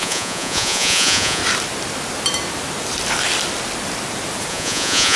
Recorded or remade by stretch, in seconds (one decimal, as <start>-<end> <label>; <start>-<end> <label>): 0.0-1.4 remade; 1.4-4.5 recorded; 4.5-5.2 remade